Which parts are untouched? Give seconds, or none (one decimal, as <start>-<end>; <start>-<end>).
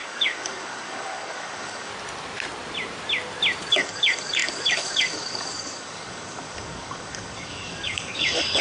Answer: 1.9-3.7